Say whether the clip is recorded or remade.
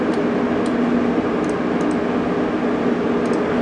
recorded